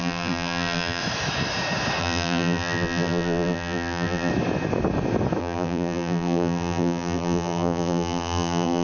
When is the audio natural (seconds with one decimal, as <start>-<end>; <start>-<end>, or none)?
1.0-2.0; 4.3-5.4